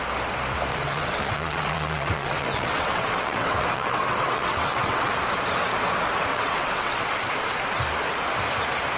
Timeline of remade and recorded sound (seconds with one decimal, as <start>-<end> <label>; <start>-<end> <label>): 0.0-0.7 recorded; 0.7-5.1 remade; 5.1-6.3 recorded; 6.3-7.1 remade; 7.1-9.0 recorded